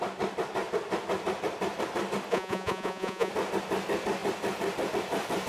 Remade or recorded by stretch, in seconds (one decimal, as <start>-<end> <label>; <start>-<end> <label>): 0.0-2.3 recorded; 2.3-3.3 remade; 3.3-5.5 recorded